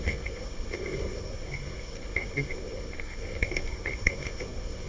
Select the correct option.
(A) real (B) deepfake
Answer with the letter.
B